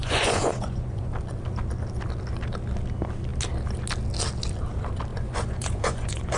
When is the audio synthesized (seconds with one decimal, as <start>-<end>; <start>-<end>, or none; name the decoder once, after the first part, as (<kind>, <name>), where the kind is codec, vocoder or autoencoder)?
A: 0.0-1.1 (vocoder, Vocos); 5.1-6.4